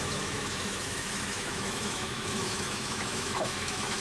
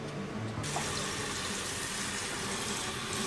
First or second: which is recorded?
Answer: second